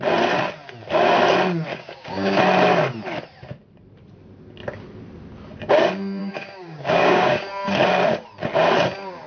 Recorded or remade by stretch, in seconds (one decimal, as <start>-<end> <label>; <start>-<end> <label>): 0.0-1.7 recorded; 1.7-2.4 remade; 2.4-6.2 recorded; 6.2-7.5 remade; 7.5-9.3 recorded